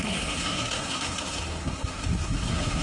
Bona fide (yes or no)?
no